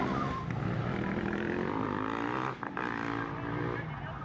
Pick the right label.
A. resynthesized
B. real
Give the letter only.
B